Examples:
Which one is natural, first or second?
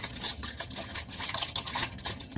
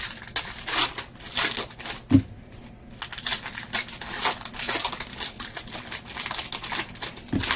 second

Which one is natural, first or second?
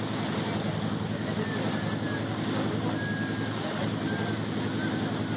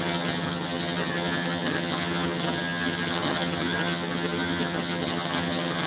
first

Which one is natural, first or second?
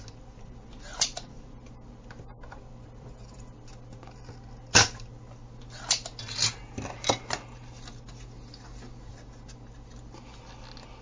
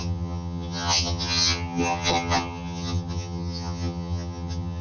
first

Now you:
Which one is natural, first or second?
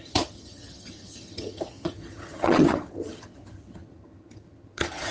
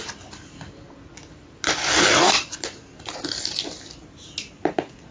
second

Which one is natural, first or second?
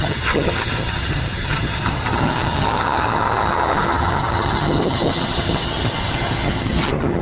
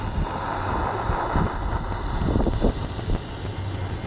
second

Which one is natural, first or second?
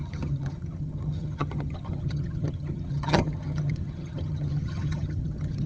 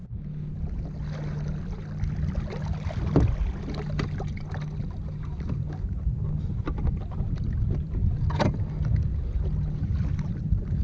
second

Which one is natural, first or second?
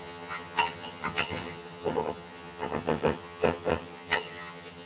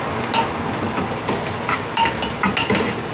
second